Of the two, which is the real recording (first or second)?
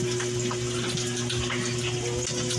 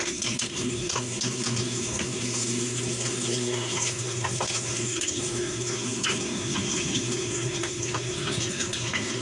first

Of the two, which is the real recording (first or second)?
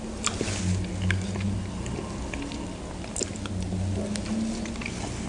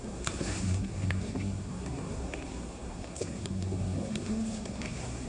first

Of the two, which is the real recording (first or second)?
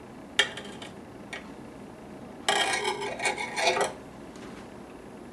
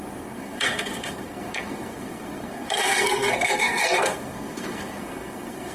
first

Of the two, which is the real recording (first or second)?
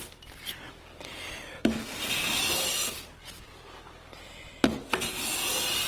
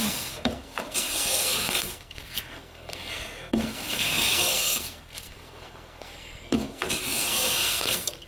first